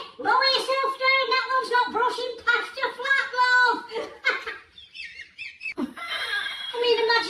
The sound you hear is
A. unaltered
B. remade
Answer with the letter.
B